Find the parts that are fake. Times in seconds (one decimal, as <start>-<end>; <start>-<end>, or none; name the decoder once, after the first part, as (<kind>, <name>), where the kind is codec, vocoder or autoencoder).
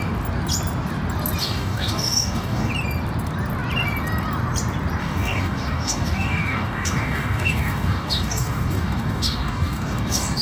1.4-2.7 (codec, DAC); 5.0-10.4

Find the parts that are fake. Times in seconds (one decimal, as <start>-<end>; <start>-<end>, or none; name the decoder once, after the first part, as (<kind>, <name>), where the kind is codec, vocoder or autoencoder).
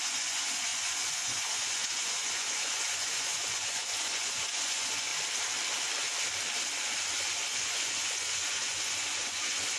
0.0-5.1 (vocoder, Vocos); 7.1-9.8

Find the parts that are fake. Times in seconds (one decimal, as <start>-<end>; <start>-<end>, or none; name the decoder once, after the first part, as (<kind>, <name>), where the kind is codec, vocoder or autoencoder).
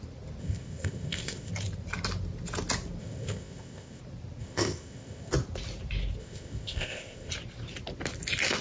0.4-1.5 (codec, ZipCodec); 3.0-4.0; 4.4-5.3; 6.2-7.3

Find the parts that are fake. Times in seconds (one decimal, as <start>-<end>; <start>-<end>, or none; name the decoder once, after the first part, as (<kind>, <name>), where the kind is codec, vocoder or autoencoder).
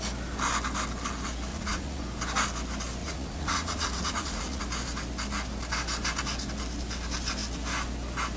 1.5-2.0 (vocoder, Vocos); 3.0-4.6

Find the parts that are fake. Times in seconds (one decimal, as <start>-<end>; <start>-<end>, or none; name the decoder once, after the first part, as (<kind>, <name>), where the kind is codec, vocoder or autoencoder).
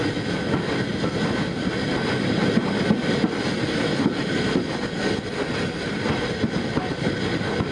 none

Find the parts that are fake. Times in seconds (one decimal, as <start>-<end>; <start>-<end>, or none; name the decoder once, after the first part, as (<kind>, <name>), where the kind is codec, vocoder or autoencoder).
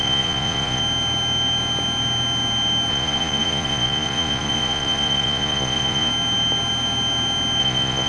0.0-0.8 (vocoder, Vocos); 2.9-6.1; 7.6-8.1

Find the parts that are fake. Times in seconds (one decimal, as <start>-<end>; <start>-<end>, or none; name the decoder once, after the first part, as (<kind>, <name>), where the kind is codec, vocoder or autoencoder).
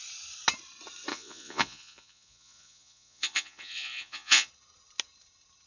1.1-4.5 (vocoder, Vocos)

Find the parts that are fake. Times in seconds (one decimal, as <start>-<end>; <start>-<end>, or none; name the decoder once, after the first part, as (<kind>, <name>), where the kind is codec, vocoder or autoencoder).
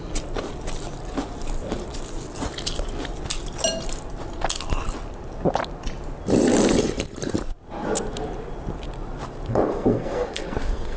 9.5-11.0 (codec, SNAC)